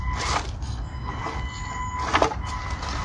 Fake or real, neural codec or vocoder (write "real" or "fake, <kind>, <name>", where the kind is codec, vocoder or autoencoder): real